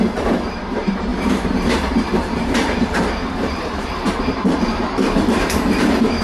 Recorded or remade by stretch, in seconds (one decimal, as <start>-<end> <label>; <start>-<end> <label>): 0.0-6.2 remade